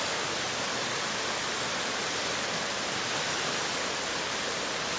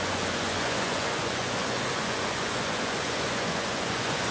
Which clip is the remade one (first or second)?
second